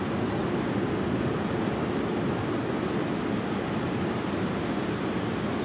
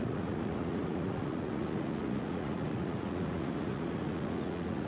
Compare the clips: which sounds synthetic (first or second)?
second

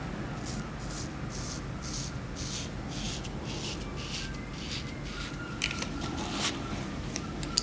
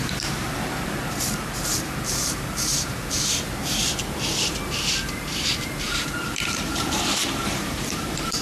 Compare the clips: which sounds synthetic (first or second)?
second